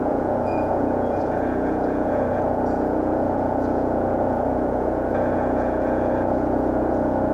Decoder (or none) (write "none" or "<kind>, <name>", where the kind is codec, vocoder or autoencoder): vocoder, Vocos